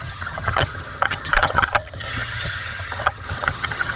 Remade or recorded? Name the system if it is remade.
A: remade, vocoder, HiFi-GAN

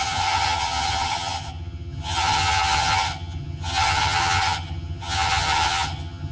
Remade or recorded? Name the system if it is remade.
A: remade, vocoder, HiFi-GAN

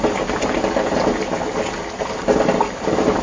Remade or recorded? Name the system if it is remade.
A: recorded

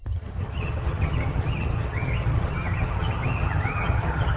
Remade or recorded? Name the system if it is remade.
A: remade, vocoder, HiFi-GAN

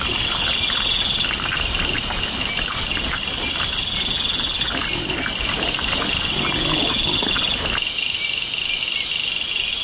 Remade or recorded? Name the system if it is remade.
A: recorded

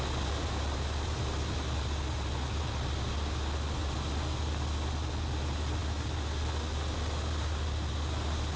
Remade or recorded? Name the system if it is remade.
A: recorded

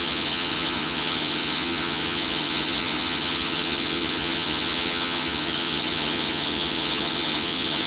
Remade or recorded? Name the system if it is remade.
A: remade, vocoder, HiFi-GAN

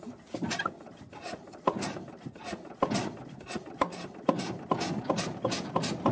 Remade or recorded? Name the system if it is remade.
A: recorded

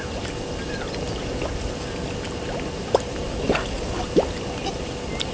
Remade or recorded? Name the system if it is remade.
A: recorded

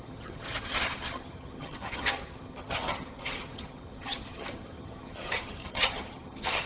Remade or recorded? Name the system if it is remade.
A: remade, vocoder, HiFi-GAN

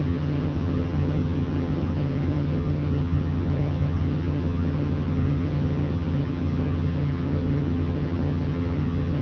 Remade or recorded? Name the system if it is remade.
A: remade, vocoder, HiFi-GAN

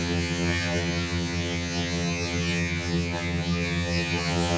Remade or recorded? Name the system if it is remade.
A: remade, vocoder, HiFi-GAN